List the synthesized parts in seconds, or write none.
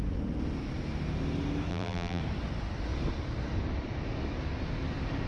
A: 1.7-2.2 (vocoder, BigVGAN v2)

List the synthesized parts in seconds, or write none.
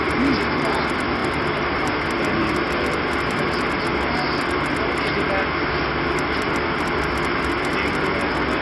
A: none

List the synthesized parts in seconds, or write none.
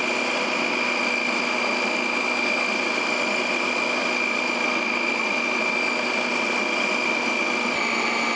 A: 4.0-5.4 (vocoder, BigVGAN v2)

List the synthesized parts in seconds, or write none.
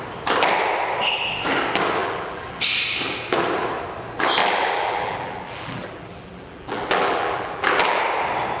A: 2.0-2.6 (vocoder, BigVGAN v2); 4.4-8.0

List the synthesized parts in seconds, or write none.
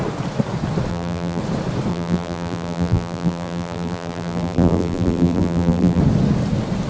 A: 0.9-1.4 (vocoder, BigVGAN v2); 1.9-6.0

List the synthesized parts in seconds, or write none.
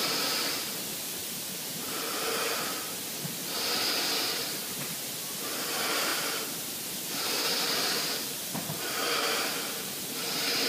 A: 1.2-1.8 (vocoder, BigVGAN v2)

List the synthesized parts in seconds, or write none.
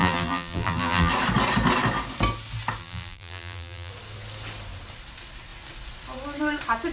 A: 0.0-1.1 (vocoder, BigVGAN v2); 2.8-3.9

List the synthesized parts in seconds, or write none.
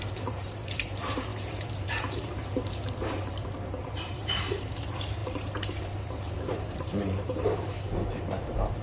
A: 0.0-8.8 (vocoder, BigVGAN v2)